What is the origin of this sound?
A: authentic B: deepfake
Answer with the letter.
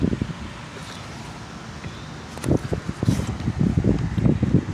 A